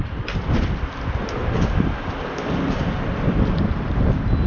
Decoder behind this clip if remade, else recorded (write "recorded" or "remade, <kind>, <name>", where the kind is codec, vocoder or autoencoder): recorded